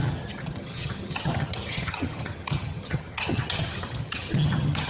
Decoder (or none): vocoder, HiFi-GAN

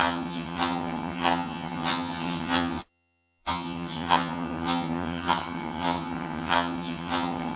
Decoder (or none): vocoder, HiFi-GAN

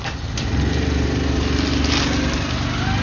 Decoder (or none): none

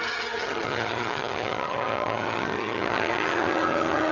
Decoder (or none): vocoder, HiFi-GAN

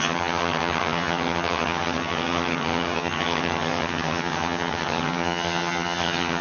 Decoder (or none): vocoder, HiFi-GAN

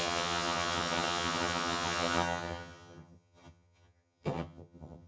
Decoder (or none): vocoder, HiFi-GAN